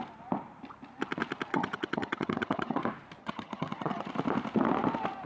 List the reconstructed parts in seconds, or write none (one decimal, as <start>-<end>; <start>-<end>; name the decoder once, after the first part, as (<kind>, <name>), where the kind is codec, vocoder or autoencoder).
1.5-2.8 (vocoder, HiFi-GAN); 3.2-4.1